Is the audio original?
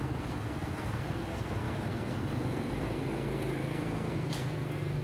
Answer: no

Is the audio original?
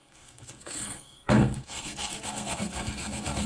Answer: no